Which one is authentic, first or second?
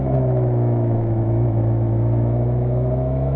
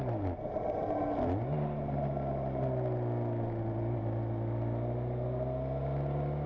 second